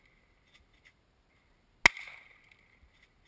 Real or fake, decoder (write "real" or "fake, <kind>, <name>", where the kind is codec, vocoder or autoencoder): real